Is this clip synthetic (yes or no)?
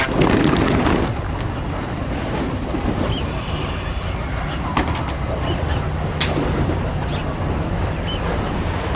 no